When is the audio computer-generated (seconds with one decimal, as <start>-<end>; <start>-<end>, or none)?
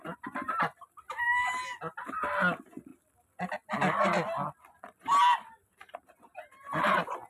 none